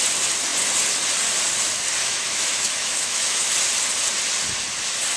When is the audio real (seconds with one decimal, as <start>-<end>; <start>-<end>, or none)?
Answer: 0.0-2.0; 3.5-5.2